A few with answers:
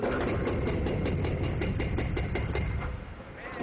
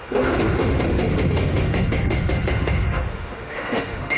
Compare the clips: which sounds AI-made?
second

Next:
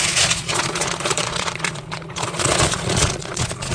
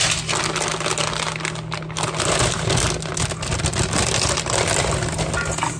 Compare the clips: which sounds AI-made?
first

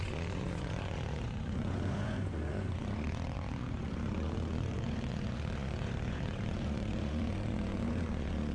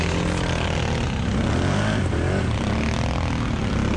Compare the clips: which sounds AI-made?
first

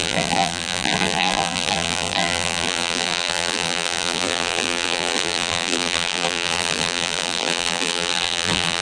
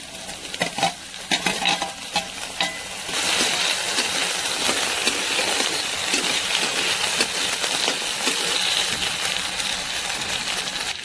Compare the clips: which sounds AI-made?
first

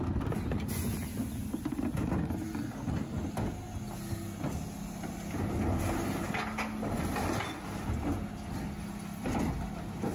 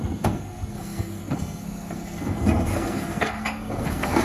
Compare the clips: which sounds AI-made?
second